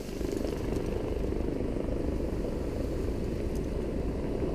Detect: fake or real real